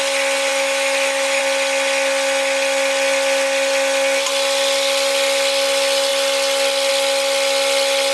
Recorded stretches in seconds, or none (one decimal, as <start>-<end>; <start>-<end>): 0.0-0.5; 1.4-8.1